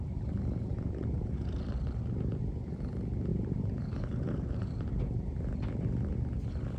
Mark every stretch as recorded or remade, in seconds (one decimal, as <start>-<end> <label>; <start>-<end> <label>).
0.0-0.7 recorded; 0.7-1.6 remade; 1.6-3.3 recorded; 3.3-5.0 remade; 5.0-6.8 recorded